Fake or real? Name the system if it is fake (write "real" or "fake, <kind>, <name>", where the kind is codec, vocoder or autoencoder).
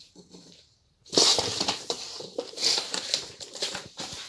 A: fake, vocoder, BigVGAN v2